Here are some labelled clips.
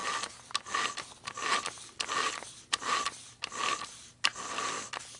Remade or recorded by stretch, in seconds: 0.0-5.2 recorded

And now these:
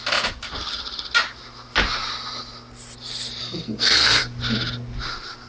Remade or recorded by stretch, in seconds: 0.0-3.4 recorded; 3.4-4.2 remade; 4.2-5.5 recorded